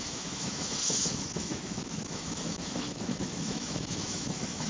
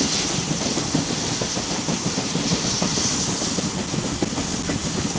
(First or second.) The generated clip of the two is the first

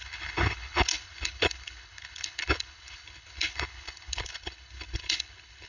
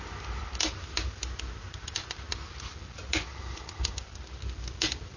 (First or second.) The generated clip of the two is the first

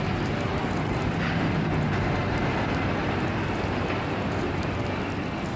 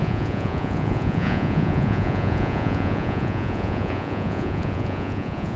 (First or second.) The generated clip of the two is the second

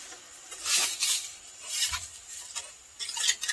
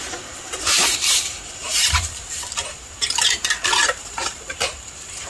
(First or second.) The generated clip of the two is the second